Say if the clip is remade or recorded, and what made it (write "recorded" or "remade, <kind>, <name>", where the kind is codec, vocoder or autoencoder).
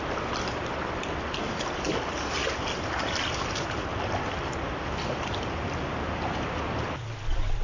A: recorded